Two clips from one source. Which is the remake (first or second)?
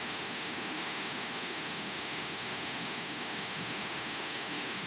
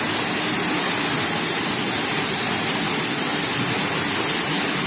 first